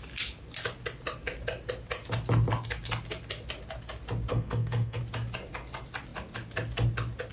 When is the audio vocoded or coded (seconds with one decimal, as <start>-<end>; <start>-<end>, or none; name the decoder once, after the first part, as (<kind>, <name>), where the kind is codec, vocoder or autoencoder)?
4.3-5.0 (codec, SNAC)